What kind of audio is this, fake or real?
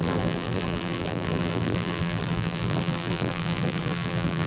fake